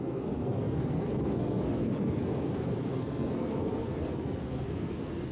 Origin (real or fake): fake